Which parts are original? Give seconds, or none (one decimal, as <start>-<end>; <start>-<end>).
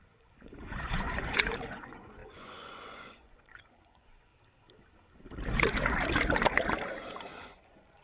4.3-7.3